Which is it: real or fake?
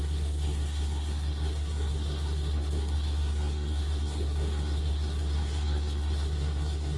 fake